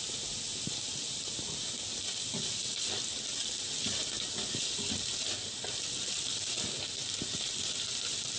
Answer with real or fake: real